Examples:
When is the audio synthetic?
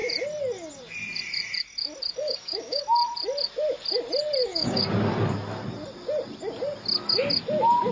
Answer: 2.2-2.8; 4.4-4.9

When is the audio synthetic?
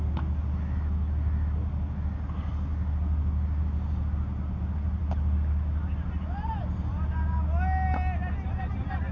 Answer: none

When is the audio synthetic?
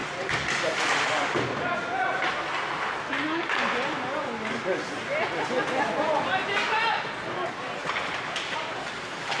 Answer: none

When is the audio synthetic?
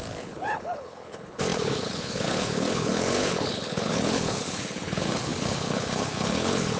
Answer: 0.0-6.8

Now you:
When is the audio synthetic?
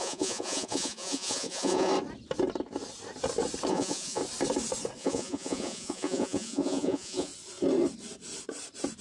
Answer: 0.0-1.9; 3.7-4.2; 5.0-7.3